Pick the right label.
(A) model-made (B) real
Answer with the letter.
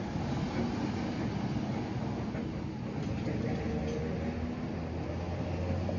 B